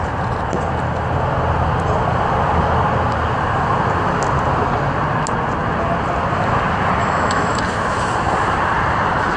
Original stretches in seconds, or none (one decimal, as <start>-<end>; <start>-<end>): 0.0-7.0; 7.6-9.4